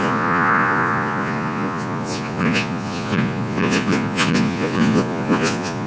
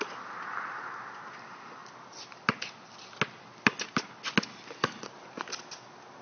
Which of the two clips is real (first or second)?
second